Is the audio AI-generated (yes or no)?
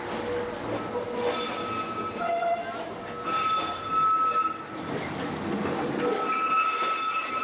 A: no